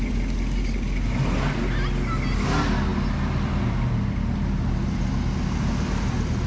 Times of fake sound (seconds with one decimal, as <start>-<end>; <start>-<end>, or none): none